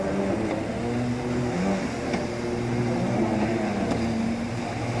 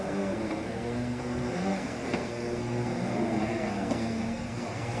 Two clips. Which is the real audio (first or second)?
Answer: first